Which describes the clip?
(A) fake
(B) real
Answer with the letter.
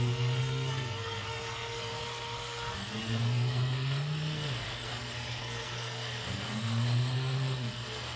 A